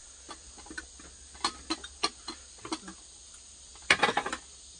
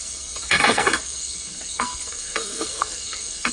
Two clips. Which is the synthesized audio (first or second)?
second